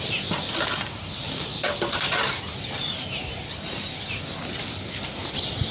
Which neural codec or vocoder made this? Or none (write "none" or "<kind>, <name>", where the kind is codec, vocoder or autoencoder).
none